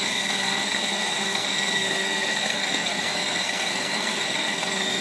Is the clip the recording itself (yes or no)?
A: no